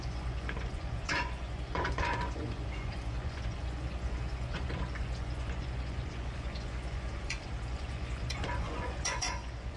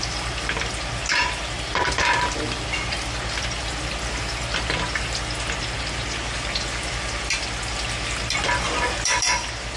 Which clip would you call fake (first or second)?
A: first